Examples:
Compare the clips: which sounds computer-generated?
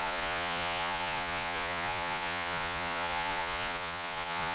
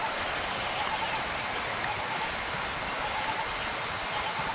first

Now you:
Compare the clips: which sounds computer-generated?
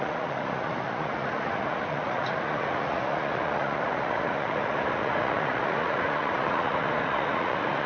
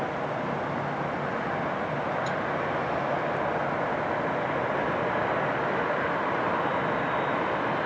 first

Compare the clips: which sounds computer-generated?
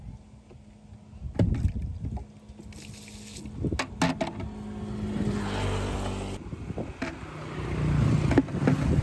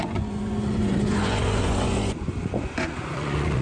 second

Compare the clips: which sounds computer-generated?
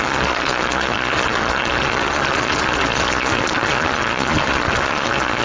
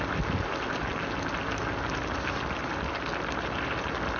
first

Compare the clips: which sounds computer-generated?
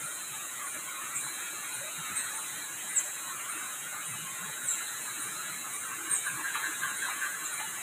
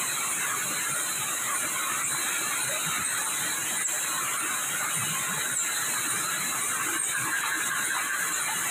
first